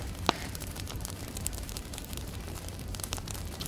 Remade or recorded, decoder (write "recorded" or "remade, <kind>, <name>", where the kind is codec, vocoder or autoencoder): remade, vocoder, BigVGAN v2